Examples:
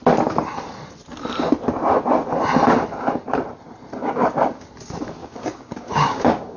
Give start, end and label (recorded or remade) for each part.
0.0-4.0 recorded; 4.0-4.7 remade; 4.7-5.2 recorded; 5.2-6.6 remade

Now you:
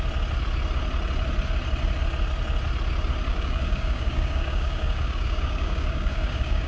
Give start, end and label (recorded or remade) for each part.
0.0-3.3 recorded; 3.3-6.7 remade

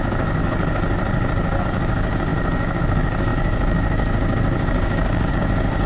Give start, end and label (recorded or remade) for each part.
0.0-0.4 remade; 0.4-1.6 recorded; 1.6-5.9 remade

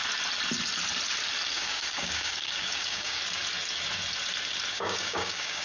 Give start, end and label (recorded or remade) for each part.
0.0-1.5 recorded; 1.5-3.2 remade; 3.2-4.7 recorded; 4.7-5.6 remade

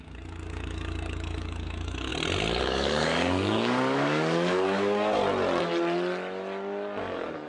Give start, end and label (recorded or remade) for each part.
0.0-2.1 remade; 2.1-2.6 recorded; 2.6-5.2 remade; 5.2-7.0 recorded; 7.0-7.5 remade